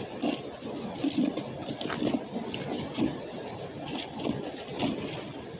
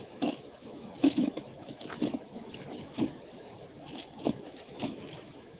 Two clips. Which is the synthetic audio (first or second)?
second